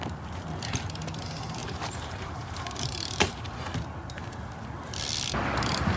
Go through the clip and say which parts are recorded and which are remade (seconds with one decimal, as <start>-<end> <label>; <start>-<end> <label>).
0.0-1.6 recorded; 1.6-3.5 remade; 3.5-6.0 recorded